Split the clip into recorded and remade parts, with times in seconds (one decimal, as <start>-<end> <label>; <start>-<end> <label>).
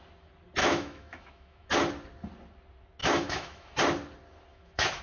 0.0-0.6 recorded; 0.6-1.7 remade; 1.7-3.0 recorded; 3.0-3.7 remade; 3.7-4.5 recorded; 4.5-5.0 remade